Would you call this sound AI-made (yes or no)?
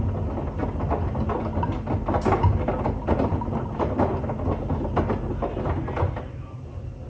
no